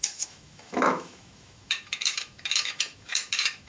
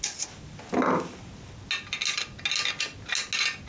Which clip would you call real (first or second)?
second